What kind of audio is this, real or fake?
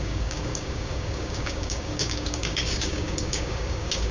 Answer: fake